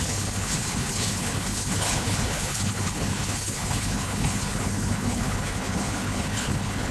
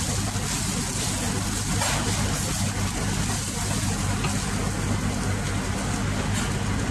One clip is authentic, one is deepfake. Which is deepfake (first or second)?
first